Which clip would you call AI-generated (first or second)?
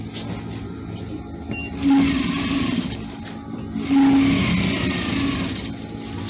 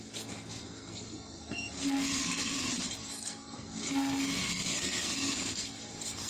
second